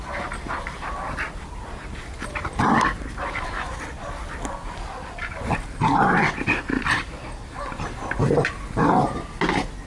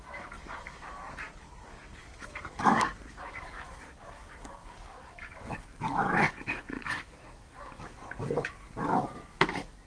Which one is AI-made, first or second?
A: second